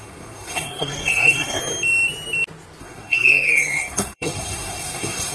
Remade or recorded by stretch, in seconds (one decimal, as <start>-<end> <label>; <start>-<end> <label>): 0.0-1.6 remade; 1.6-2.8 recorded; 2.8-5.3 remade